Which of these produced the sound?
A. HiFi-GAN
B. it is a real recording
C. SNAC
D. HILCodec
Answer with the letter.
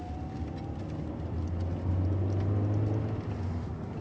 B